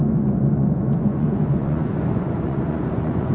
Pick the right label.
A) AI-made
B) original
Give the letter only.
A